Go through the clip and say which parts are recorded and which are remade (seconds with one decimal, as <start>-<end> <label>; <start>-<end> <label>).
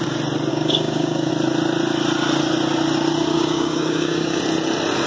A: 0.0-0.5 recorded; 0.5-1.3 remade; 1.3-3.3 recorded; 3.3-4.4 remade; 4.4-5.1 recorded